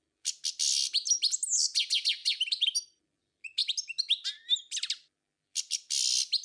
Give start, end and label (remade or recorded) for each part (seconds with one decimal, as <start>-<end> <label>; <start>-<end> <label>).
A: 0.0-6.4 recorded